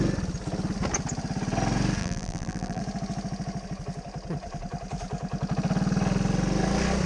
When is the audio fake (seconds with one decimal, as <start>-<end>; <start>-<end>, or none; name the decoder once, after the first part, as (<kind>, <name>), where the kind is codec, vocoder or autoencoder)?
2.0-2.8 (vocoder, BigVGAN v2)